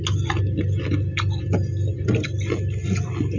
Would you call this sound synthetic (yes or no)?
no